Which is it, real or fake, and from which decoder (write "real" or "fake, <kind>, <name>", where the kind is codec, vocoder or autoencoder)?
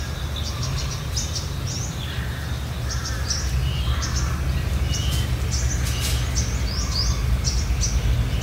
real